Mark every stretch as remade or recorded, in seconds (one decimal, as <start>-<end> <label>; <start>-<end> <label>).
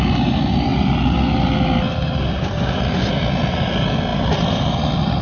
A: 0.0-5.2 recorded